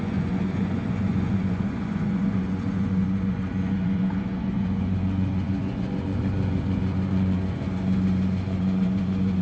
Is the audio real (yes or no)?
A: no